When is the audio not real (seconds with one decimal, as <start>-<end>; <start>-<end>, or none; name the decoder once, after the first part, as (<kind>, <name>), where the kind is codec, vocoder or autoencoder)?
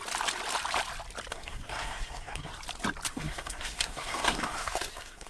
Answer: 1.3-2.5 (codec, SNAC); 3.1-5.3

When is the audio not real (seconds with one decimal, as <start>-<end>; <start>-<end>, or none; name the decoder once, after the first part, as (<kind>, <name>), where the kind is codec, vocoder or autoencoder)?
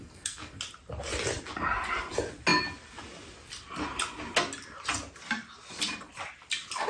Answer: 0.0-0.6 (codec, SNAC)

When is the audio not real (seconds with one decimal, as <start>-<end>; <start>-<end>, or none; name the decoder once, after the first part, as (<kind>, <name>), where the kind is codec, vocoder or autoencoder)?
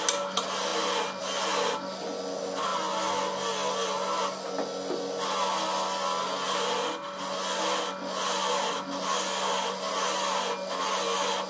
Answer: none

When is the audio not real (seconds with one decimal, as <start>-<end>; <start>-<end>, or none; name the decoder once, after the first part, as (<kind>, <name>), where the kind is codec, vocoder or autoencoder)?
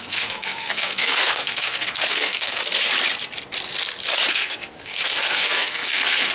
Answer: 0.0-2.6 (codec, SNAC); 4.3-6.3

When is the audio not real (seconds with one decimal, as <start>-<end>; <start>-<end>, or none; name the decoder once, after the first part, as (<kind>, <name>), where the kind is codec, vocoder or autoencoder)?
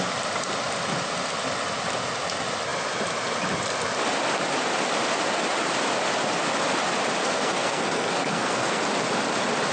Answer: 7.2-8.8 (codec, SNAC)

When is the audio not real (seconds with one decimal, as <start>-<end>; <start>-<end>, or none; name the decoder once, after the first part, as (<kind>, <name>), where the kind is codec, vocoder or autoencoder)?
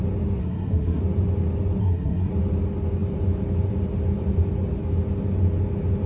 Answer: 0.4-1.0 (codec, SNAC); 1.8-2.3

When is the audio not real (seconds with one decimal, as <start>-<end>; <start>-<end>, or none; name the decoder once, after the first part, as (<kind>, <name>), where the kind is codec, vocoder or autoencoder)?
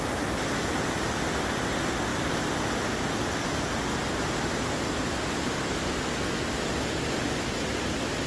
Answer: none